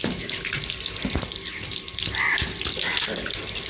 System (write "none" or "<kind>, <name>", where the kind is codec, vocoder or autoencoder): none